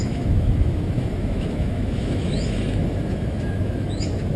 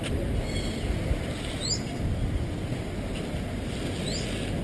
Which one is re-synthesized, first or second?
first